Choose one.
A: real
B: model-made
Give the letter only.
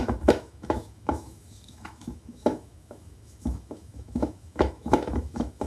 B